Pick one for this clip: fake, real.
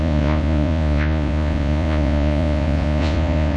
fake